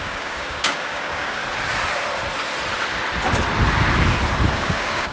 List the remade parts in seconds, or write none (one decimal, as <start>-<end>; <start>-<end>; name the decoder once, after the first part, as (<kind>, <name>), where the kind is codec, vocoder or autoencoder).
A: 0.0-1.4 (codec, DAC); 4.5-5.1

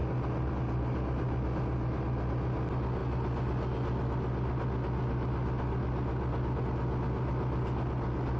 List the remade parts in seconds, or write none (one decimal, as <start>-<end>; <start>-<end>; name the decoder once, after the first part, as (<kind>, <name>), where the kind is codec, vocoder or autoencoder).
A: none